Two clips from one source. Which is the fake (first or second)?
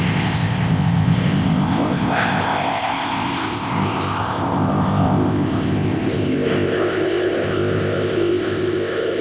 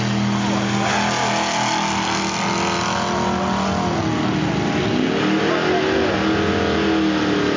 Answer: first